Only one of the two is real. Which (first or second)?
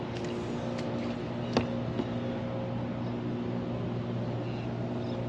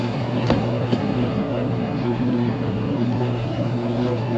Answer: first